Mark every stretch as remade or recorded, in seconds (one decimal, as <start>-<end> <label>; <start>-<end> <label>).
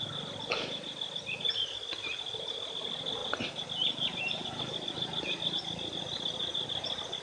0.0-7.2 recorded